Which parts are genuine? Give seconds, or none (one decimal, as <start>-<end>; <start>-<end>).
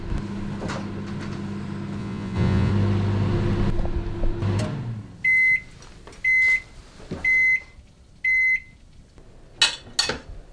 0.0-2.0; 2.7-10.5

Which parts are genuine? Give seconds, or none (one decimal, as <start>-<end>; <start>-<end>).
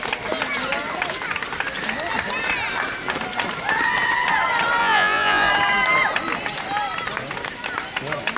0.0-4.8; 5.5-8.4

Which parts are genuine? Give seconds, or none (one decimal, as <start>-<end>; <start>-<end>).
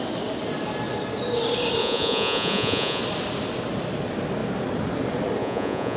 0.0-1.8; 3.0-5.4